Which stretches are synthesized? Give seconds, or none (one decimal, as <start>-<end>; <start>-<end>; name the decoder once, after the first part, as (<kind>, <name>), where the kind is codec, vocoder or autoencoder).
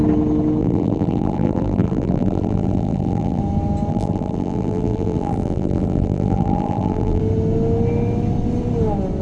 0.6-3.4 (vocoder, BigVGAN v2); 3.9-7.2